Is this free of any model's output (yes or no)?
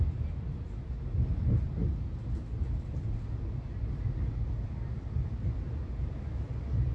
yes